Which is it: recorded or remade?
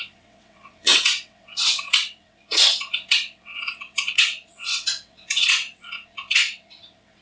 remade